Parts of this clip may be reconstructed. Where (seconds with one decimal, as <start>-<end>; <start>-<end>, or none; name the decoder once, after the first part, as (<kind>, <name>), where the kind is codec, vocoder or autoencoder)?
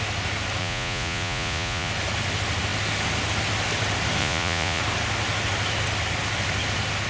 0.6-1.9 (vocoder, Vocos); 4.2-4.8